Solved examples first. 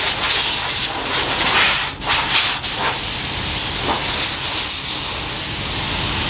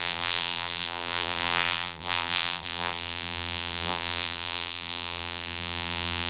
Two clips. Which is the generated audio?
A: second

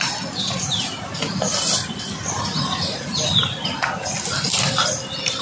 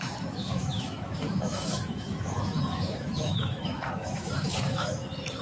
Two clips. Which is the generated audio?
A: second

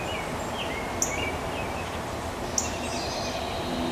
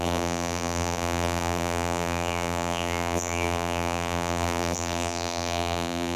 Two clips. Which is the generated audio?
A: second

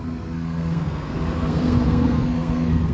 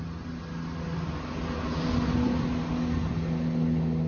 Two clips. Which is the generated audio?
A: first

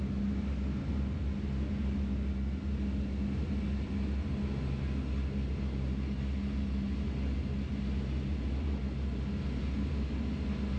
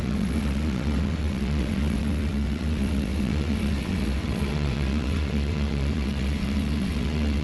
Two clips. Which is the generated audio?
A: second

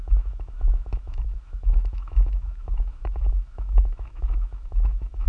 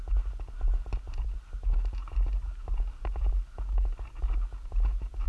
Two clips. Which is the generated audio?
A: first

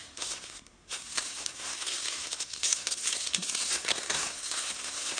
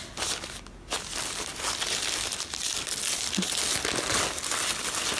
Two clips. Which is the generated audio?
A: first